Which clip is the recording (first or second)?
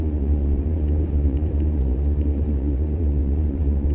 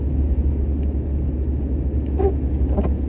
second